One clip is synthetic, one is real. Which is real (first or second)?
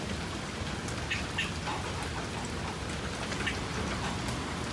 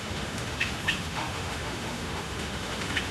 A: first